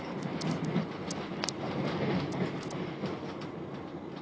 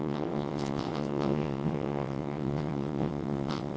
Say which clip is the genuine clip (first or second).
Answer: first